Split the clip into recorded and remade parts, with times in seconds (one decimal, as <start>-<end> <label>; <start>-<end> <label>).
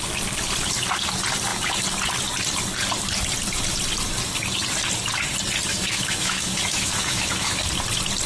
0.0-5.7 recorded; 5.7-7.6 remade; 7.6-8.3 recorded